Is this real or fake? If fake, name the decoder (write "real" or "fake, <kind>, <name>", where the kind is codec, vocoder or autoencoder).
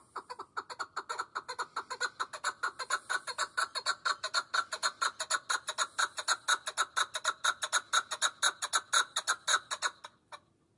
real